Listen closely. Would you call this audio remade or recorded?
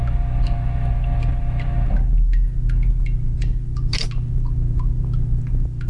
recorded